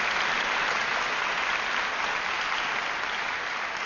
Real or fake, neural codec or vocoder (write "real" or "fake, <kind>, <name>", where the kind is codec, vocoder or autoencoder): real